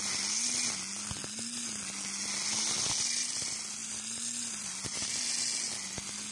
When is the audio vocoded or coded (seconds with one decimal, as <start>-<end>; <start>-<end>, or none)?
3.8-5.2

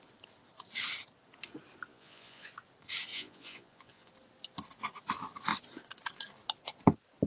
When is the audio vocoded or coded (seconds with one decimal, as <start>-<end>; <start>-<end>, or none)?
1.9-2.5; 3.1-4.1

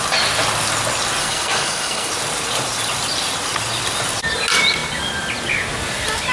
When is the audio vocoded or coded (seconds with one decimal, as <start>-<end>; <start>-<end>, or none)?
1.2-2.1

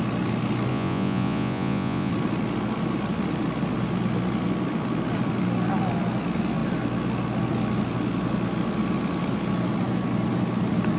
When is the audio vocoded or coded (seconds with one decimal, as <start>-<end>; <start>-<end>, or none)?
0.7-2.1

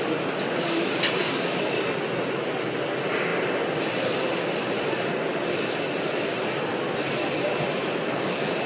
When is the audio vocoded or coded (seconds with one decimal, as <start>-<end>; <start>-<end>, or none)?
none

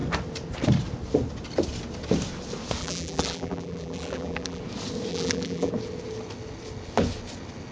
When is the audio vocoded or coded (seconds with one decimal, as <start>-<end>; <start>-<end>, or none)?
2.8-4.6; 5.1-5.7